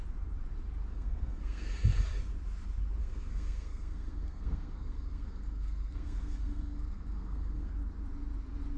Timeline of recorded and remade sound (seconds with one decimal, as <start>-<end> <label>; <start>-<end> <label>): 0.0-0.9 recorded; 0.9-1.7 remade; 1.7-3.0 recorded; 3.0-7.7 remade; 7.7-8.8 recorded